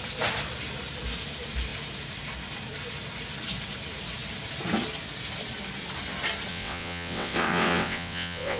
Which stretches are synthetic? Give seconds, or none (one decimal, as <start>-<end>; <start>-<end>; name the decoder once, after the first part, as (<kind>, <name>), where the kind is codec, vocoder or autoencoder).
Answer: 6.5-8.6 (vocoder, WaveNeXt)